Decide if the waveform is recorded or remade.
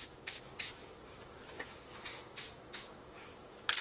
remade